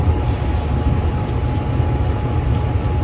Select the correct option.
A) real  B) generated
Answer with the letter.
A